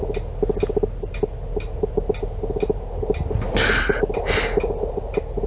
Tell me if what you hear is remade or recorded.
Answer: recorded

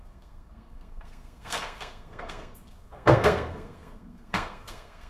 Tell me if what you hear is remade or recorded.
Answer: remade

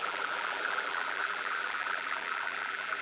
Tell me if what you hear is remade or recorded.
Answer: remade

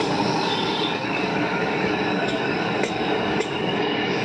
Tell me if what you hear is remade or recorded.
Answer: remade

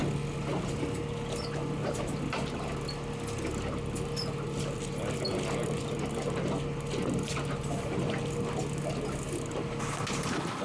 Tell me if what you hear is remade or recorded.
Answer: recorded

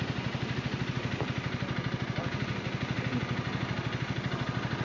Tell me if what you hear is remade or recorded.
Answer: recorded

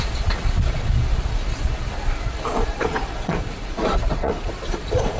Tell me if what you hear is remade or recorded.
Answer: remade